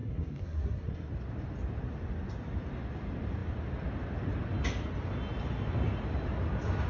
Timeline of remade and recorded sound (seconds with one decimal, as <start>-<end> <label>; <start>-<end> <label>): 0.0-1.1 remade; 1.1-6.9 recorded